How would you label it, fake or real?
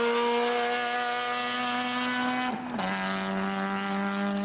real